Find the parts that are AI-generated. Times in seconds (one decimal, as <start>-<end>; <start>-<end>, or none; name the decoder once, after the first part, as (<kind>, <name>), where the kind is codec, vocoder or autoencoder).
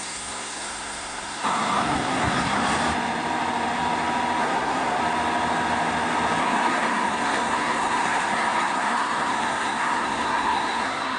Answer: 0.0-2.6 (codec, SNAC); 4.4-5.0; 6.4-11.2